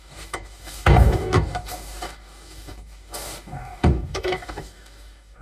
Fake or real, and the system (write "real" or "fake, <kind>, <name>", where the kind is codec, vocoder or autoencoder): fake, codec, DAC